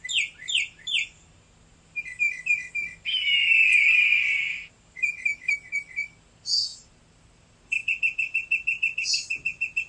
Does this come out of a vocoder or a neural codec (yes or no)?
no